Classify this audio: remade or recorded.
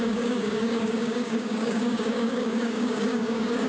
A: remade